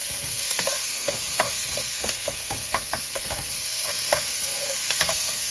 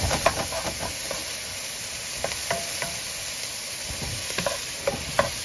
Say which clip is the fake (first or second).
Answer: first